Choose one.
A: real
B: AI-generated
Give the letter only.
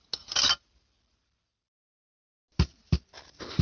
A